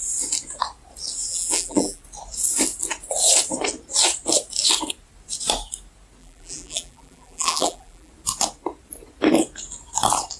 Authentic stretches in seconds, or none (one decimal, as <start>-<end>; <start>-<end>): 0.0-1.3; 2.0-6.2; 8.1-10.4